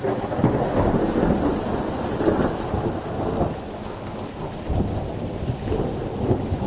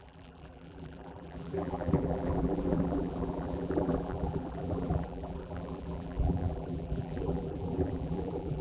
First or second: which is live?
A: first